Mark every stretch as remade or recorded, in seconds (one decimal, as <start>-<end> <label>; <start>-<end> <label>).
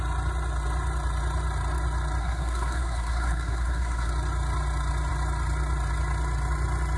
0.0-2.2 recorded; 2.2-4.1 remade; 4.1-7.0 recorded